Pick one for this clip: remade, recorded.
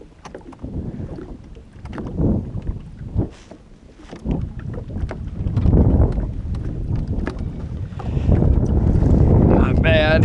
recorded